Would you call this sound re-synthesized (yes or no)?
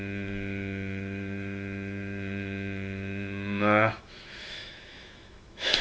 yes